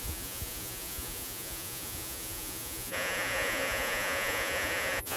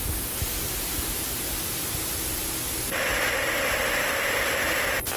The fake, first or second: first